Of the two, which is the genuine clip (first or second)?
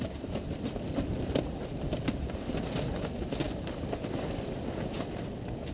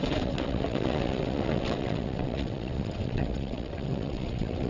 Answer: first